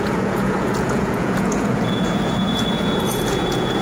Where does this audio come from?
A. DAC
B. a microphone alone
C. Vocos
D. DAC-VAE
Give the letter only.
C